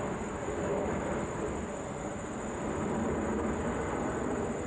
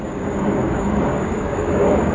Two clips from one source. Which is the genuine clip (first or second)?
first